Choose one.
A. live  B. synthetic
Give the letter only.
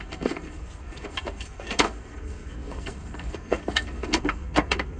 B